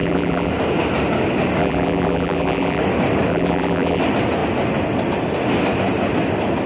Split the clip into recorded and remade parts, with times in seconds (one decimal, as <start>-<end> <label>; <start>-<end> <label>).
0.0-0.5 remade; 0.5-1.6 recorded; 1.6-2.8 remade; 2.8-3.3 recorded; 3.3-4.0 remade; 4.0-6.7 recorded